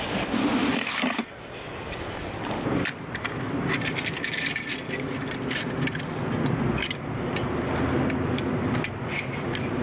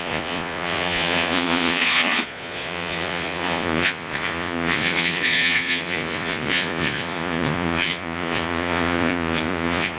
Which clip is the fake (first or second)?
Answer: second